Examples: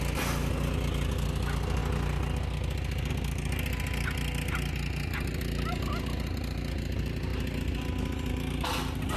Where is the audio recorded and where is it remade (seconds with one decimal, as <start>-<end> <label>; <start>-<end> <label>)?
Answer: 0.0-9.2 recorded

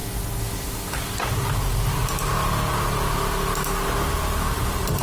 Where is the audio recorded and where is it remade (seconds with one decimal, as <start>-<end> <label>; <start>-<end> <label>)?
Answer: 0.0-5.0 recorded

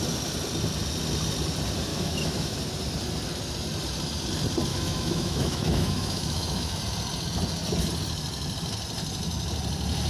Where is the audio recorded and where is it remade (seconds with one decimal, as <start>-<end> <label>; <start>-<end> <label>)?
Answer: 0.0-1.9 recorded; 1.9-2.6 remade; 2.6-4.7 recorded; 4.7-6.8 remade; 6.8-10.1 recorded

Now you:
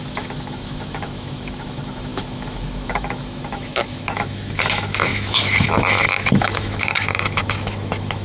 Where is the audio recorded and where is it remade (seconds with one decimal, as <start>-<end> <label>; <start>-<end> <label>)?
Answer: 0.0-8.2 remade